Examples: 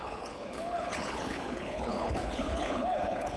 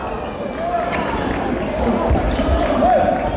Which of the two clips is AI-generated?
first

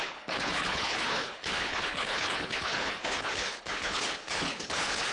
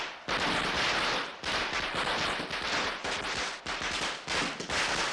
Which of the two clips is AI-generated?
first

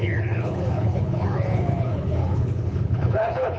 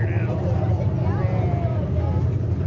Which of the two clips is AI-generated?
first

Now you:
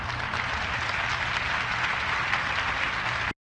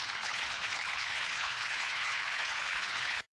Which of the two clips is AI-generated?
second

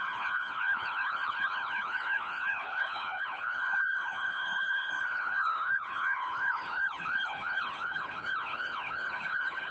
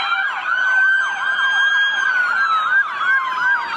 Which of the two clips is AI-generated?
first